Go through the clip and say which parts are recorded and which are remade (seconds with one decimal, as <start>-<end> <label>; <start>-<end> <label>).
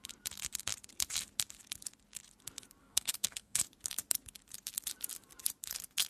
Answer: 0.0-2.8 recorded; 2.8-3.6 remade; 3.6-6.1 recorded